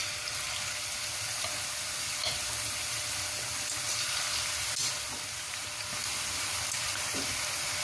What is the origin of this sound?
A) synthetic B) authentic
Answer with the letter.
B